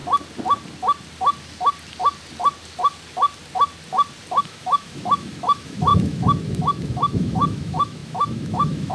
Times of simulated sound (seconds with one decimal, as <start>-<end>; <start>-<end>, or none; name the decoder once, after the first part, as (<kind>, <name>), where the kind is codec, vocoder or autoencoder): 4.4-8.9 (autoencoder, DAC-VAE)